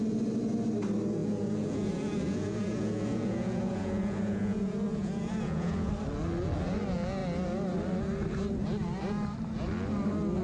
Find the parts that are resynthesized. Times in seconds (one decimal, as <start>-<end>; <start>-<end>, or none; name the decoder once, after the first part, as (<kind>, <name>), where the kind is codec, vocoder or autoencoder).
1.2-5.9 (vocoder, Vocos)

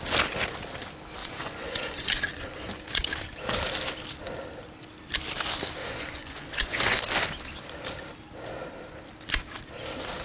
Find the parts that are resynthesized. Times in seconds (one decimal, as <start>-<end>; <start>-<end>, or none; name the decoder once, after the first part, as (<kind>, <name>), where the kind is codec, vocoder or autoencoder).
1.2-2.7 (vocoder, Vocos); 5.8-7.0